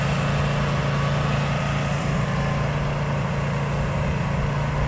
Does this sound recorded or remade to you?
recorded